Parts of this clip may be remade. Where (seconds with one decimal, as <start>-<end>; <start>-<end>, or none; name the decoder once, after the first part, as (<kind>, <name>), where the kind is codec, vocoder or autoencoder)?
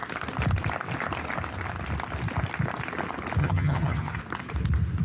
3.4-4.2 (vocoder, HiFi-GAN)